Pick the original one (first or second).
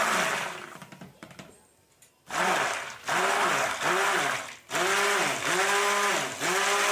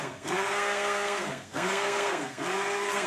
first